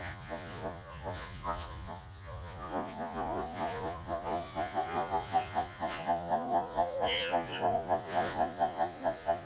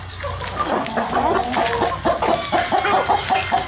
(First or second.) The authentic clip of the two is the second